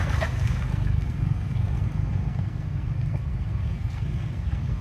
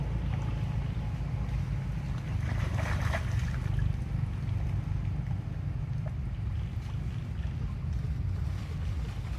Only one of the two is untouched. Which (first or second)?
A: second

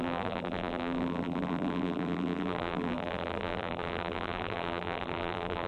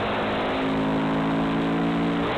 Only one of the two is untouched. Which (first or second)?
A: second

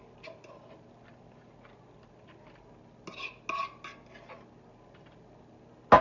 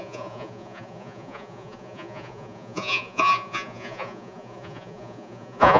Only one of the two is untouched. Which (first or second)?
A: first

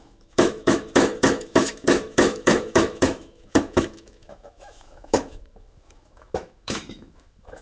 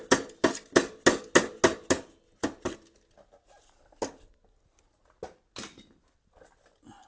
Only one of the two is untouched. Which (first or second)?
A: second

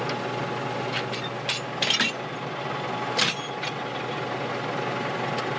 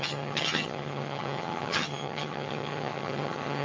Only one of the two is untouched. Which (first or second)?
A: first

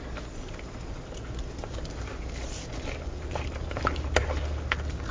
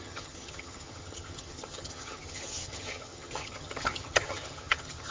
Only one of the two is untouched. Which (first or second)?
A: first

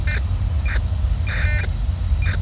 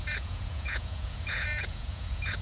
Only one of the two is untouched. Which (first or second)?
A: first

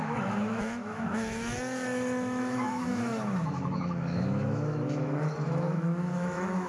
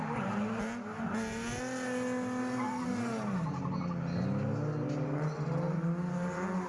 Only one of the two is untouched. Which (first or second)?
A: second